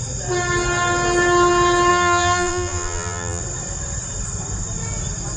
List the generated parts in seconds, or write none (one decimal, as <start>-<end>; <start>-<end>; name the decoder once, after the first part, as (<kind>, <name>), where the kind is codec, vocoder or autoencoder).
1.9-3.4 (vocoder, BigVGAN v2)